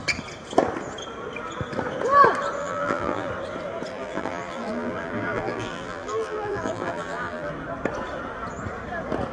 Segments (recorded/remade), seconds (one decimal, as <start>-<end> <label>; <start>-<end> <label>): 0.0-2.6 recorded; 2.6-3.3 remade; 3.3-3.9 recorded; 3.9-7.5 remade; 7.5-9.3 recorded